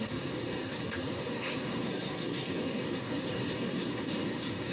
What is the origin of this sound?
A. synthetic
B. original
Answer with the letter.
A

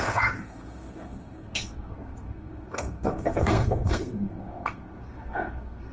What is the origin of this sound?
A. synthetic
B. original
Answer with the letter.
A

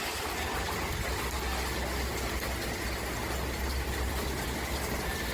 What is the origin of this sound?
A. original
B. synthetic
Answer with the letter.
A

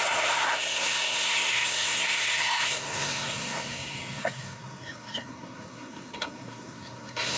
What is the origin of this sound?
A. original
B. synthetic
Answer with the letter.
B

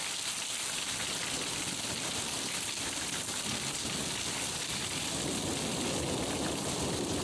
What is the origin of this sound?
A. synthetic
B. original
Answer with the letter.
B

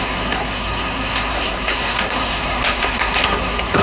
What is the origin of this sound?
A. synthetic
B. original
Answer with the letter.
A